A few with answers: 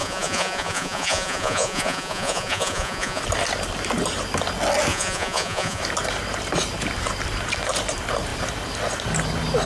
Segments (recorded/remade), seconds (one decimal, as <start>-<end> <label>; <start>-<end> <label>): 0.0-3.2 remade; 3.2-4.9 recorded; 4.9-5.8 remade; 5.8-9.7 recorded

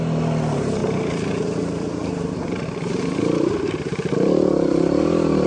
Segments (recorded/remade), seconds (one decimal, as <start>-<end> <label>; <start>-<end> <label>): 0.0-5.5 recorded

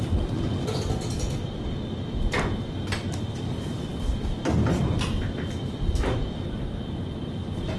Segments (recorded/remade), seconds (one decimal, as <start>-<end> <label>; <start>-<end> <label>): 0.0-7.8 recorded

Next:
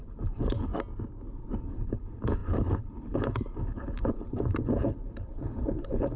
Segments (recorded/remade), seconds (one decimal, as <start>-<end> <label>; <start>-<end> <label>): 0.0-0.7 remade; 0.7-1.6 recorded; 1.6-6.2 remade